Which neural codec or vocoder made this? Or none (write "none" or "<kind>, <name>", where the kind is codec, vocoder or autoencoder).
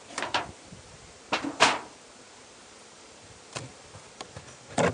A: vocoder, BigVGAN v2